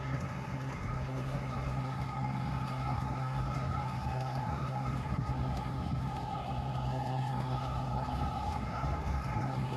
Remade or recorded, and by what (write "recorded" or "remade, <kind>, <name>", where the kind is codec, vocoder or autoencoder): remade, codec, SNAC